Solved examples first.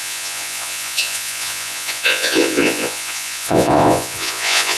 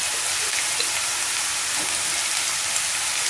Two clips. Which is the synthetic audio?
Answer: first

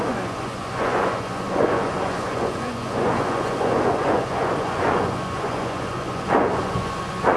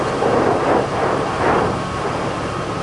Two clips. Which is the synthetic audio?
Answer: first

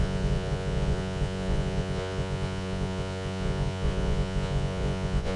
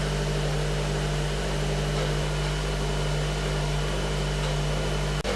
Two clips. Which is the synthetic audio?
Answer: first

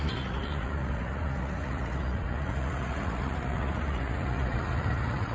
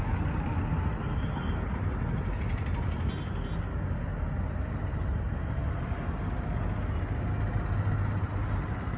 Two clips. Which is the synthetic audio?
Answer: first